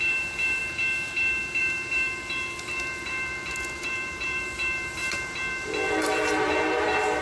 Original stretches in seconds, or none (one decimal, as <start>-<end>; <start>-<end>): 0.6-1.6